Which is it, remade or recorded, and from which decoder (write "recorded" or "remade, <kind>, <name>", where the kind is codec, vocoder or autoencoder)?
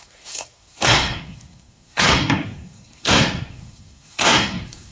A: remade, codec, SNAC